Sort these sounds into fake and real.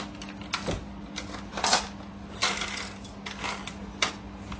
real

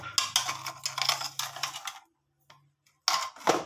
real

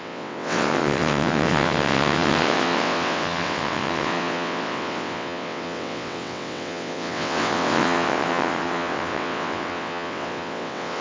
fake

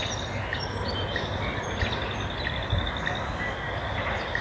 real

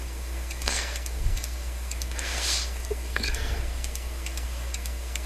fake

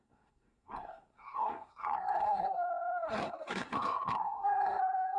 fake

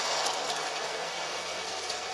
fake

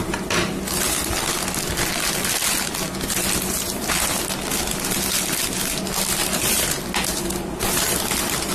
real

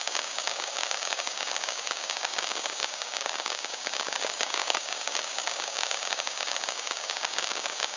fake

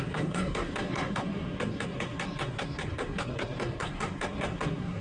fake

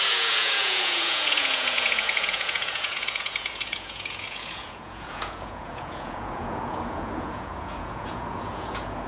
fake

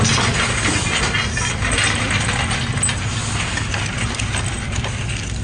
real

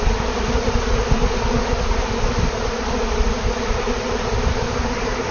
real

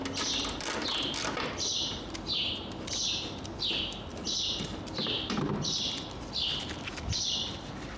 fake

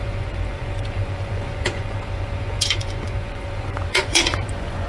fake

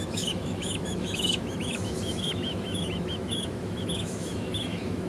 fake